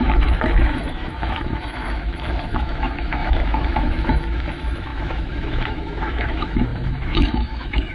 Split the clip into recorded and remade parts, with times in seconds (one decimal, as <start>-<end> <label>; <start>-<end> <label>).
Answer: 0.0-7.9 remade